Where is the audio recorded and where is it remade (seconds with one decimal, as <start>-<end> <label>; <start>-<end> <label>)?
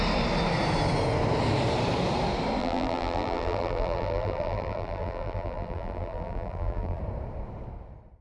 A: 0.0-2.6 recorded; 2.6-7.0 remade; 7.0-8.2 recorded